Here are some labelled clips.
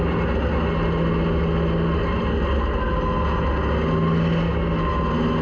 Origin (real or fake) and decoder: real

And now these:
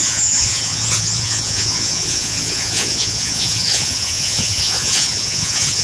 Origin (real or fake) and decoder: fake, vocoder, Vocos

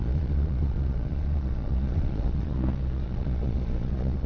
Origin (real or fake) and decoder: fake, vocoder, Vocos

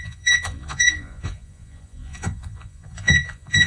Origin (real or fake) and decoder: fake, vocoder, Vocos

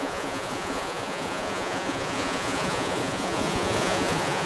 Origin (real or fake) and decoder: fake, vocoder, Vocos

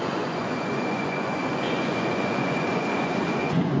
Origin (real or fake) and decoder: fake, vocoder, Vocos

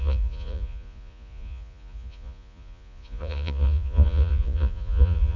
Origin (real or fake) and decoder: fake, vocoder, Vocos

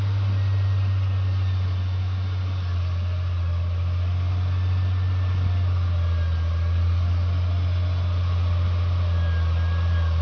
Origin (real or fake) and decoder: real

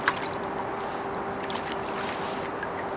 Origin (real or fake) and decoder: real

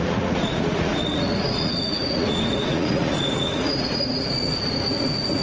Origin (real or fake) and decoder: fake, vocoder, Vocos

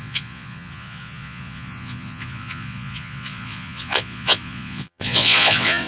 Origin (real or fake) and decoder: fake, vocoder, Vocos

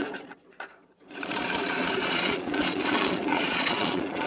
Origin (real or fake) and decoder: fake, vocoder, Vocos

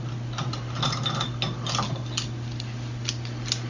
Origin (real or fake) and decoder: real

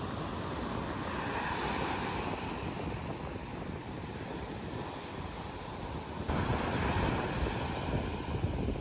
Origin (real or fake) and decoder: real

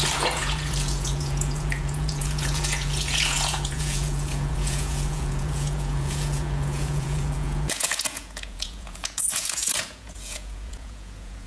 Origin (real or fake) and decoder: fake, vocoder, Vocos